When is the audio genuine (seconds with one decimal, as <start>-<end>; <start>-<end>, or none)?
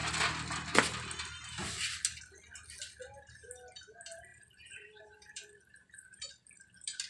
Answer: 0.0-4.3; 6.3-7.1